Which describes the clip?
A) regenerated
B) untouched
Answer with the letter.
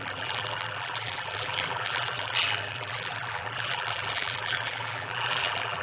A